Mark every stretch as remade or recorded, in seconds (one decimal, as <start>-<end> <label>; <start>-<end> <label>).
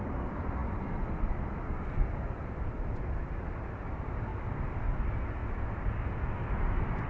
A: 0.0-7.1 recorded